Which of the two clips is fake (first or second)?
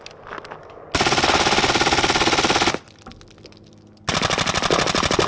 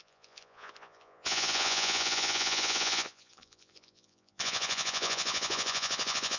second